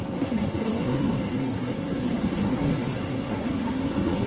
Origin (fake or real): fake